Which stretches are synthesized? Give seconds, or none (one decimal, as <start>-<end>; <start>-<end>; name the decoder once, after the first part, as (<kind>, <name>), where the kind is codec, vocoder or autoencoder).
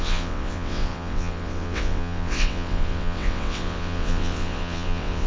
0.0-5.3 (vocoder, WaveNeXt)